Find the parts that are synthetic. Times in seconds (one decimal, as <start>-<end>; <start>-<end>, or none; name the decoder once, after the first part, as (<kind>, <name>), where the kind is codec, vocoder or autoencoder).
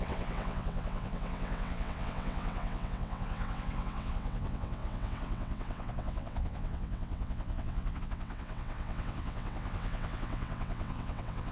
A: 0.0-11.5 (vocoder, WaveNeXt)